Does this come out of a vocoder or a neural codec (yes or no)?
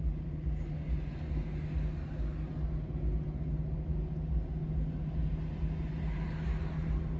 no